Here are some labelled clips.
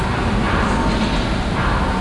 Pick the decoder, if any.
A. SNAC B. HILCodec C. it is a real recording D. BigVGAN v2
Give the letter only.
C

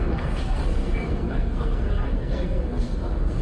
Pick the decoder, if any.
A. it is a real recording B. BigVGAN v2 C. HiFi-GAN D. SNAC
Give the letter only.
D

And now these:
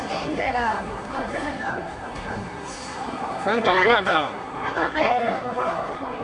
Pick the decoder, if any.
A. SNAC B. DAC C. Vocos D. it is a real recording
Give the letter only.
A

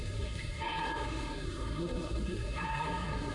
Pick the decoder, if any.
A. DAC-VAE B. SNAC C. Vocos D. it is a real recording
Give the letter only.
B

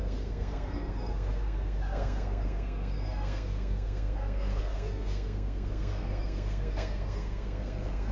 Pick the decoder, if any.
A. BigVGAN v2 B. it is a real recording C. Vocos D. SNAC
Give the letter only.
D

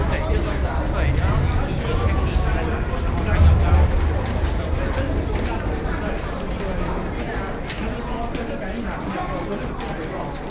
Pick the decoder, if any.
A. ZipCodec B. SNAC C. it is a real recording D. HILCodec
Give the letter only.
C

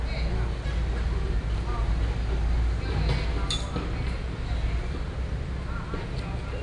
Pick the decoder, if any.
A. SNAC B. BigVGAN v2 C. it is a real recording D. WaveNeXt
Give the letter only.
C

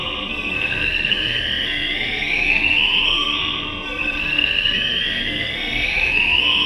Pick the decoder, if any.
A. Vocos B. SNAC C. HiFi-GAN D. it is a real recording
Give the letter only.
B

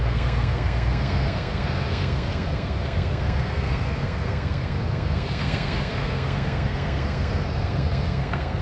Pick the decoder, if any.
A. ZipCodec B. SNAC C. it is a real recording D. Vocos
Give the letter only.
B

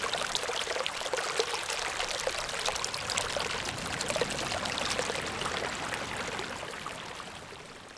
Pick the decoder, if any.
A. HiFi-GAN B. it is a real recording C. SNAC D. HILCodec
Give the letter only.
B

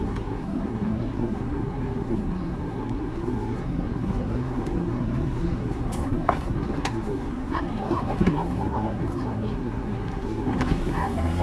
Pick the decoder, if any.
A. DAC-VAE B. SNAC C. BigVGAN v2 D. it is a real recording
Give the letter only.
B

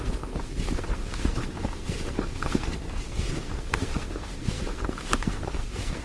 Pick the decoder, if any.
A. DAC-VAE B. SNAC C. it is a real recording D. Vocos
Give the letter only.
B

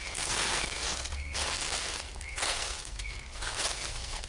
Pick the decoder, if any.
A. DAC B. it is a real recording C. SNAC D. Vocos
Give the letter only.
C